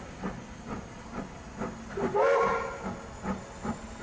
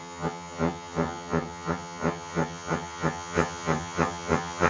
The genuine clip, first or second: first